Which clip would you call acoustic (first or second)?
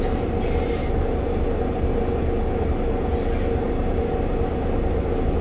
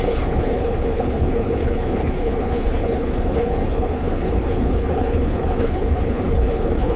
first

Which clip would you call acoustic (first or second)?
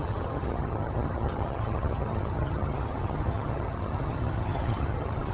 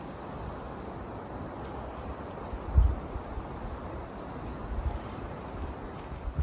second